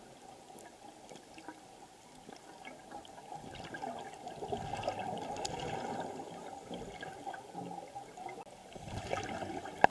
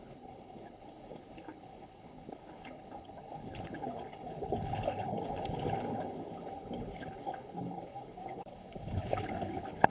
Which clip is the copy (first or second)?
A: second